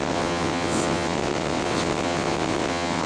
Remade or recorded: remade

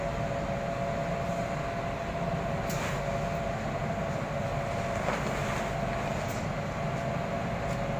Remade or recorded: recorded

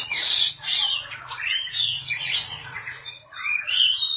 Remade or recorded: remade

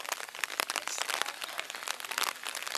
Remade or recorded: recorded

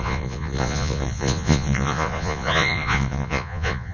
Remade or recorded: remade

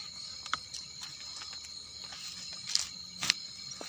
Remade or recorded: recorded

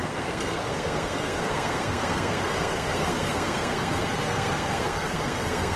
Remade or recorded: remade